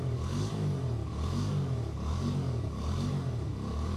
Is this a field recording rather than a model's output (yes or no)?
no